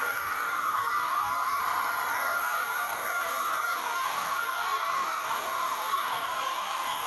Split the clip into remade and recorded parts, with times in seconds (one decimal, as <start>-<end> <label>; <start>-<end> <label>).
0.0-1.6 remade; 1.6-2.1 recorded; 2.1-7.1 remade